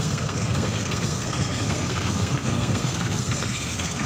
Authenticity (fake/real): fake